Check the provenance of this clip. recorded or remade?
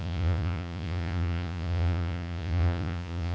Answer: remade